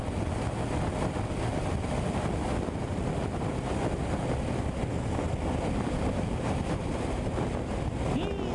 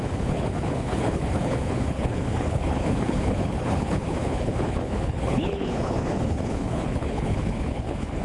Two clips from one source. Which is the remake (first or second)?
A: second